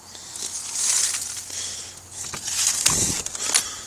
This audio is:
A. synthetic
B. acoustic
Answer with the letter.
B